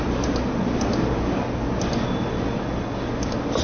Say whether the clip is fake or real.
real